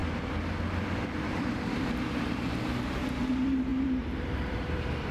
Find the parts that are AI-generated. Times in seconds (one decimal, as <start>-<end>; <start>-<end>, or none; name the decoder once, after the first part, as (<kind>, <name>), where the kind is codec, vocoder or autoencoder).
1.0-5.1 (vocoder, BigVGAN v2)